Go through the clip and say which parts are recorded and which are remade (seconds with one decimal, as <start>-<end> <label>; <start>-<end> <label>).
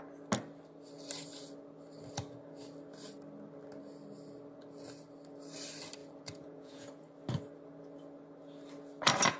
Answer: 0.0-6.0 recorded; 6.0-7.0 remade; 7.0-9.4 recorded